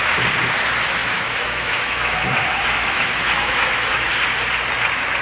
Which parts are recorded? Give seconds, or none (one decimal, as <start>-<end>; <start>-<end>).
0.0-1.0; 4.1-5.2